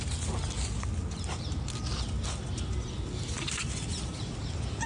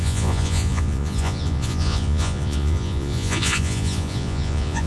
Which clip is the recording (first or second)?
first